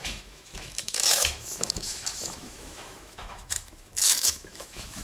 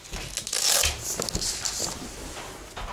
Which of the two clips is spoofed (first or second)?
first